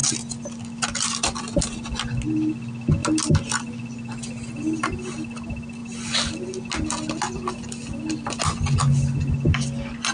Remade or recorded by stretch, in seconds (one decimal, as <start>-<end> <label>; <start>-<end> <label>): 0.0-10.1 recorded